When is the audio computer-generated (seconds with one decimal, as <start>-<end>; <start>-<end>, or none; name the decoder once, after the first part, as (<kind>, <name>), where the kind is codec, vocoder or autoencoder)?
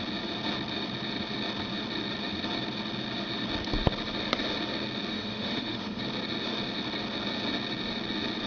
5.1-6.0 (autoencoder, DAC-VAE)